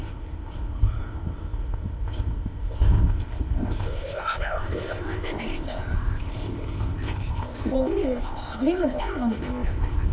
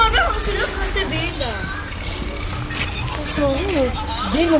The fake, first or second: first